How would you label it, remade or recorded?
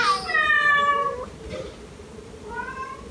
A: recorded